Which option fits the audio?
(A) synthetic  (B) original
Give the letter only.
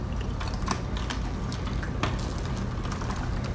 B